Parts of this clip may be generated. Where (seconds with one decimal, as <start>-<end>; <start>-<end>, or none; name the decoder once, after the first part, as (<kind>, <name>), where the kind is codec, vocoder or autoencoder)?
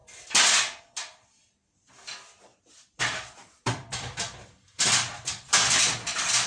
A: 2.5-6.5 (vocoder, BigVGAN v2)